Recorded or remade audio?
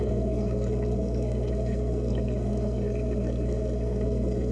remade